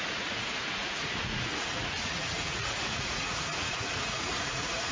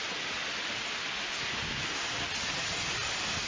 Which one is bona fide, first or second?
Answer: second